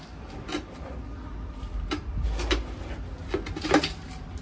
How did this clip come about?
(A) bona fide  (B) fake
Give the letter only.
A